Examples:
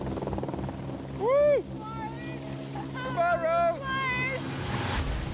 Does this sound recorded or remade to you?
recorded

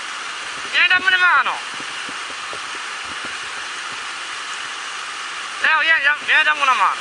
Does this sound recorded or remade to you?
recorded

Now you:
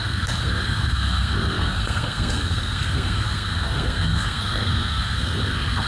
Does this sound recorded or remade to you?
remade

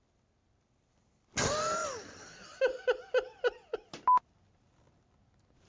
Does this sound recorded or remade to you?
recorded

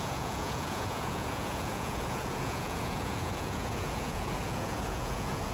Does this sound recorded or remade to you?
remade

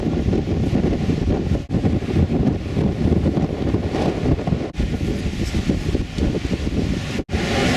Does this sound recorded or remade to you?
recorded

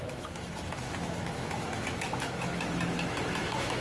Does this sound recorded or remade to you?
remade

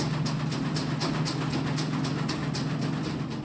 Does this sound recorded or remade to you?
recorded